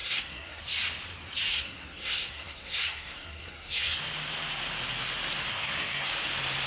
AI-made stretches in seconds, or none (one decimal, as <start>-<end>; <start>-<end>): 0.0-0.6; 1.5-4.0; 5.5-6.1